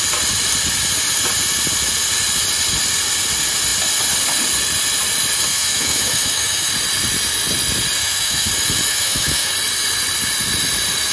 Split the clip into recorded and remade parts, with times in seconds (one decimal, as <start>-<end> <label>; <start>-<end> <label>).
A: 0.0-5.5 recorded; 5.5-6.7 remade; 6.7-8.0 recorded; 8.0-8.5 remade; 8.5-8.9 recorded; 8.9-9.5 remade; 9.5-11.1 recorded